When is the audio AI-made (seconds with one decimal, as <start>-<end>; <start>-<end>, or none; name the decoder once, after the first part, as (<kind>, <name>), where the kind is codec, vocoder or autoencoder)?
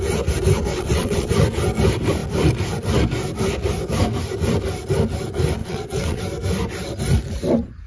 0.7-1.3 (vocoder, WaveNeXt); 5.6-6.2